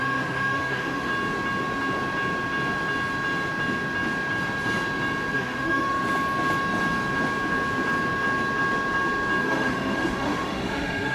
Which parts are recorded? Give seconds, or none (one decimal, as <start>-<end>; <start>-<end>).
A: 1.1-5.3; 6.0-9.4